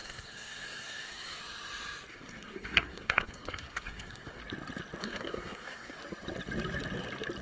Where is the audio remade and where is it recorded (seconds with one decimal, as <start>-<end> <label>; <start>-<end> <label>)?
0.0-1.4 remade; 1.4-2.1 recorded; 2.1-4.4 remade; 4.4-5.0 recorded; 5.0-6.0 remade; 6.0-7.4 recorded